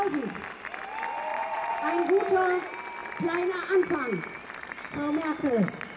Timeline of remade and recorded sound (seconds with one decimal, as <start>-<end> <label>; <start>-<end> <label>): 0.0-1.3 recorded; 1.3-1.8 remade; 1.8-5.4 recorded; 5.4-6.0 remade